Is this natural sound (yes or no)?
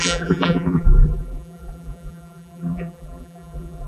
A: no